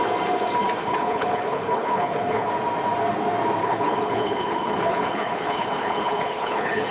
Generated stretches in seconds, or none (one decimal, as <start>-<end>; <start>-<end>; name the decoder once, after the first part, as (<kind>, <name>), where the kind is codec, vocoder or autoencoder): 0.8-2.5 (codec, HILCodec); 3.6-6.9